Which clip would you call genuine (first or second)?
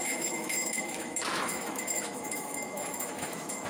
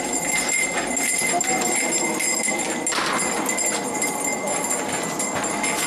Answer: second